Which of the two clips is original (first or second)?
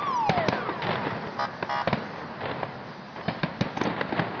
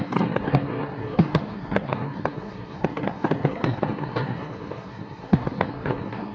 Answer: first